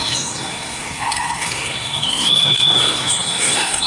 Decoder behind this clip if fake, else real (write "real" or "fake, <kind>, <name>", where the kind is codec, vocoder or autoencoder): fake, codec, SNAC